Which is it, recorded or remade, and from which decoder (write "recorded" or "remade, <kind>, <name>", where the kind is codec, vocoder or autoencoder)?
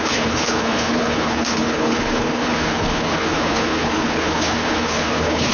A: remade, codec, HILCodec